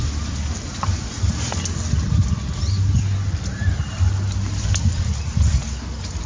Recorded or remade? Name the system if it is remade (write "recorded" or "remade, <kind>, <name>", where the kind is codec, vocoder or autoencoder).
recorded